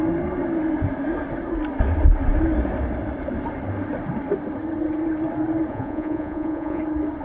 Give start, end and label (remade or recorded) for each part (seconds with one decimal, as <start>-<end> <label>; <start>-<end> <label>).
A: 0.0-5.7 recorded; 5.7-6.8 remade; 6.8-7.2 recorded